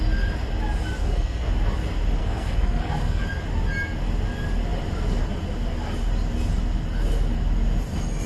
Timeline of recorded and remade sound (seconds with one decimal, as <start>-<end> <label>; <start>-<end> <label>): 0.0-1.0 recorded; 1.0-1.5 remade; 1.5-2.2 recorded; 2.2-3.2 remade; 3.2-8.3 recorded